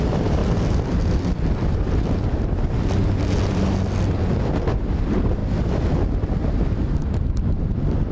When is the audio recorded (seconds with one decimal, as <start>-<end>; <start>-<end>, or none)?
0.4-4.9; 5.4-6.9